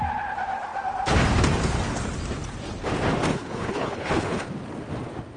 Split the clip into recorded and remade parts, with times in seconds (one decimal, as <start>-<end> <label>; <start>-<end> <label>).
0.0-3.3 recorded; 3.3-4.5 remade; 4.5-5.4 recorded